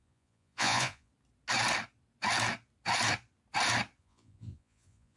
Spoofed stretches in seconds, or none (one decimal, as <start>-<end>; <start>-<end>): 0.0-1.1; 4.0-5.2